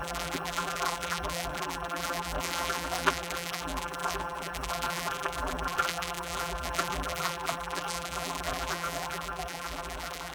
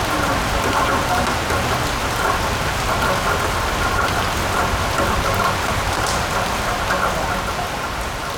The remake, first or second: first